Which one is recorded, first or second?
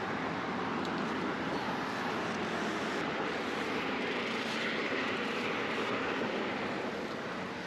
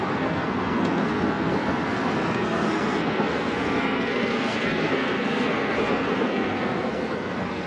first